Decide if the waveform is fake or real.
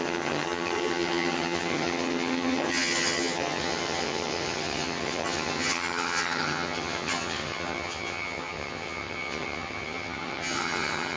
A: fake